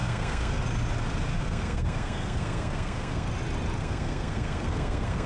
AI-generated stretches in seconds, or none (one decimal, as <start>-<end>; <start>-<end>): 0.0-0.6; 1.3-3.3; 3.8-5.3

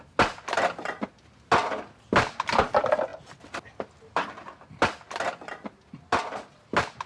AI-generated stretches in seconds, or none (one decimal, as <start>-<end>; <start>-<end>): none

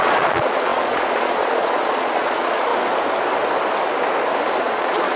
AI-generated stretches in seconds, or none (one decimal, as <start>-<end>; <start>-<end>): 0.0-2.7; 4.6-5.2

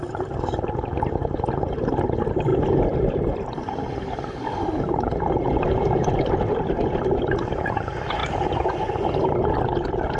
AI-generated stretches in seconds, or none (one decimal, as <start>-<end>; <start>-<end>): none

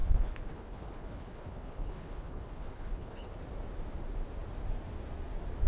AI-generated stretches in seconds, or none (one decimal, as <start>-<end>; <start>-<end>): 0.0-3.4

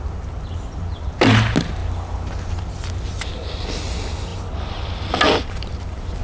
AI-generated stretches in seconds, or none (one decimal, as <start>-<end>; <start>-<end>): none

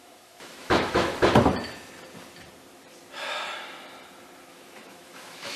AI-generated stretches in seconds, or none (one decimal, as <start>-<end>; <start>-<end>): 0.0-1.1; 4.5-5.6

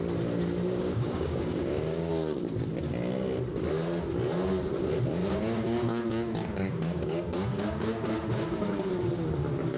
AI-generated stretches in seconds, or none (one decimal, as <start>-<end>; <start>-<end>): 0.8-2.1; 5.2-8.9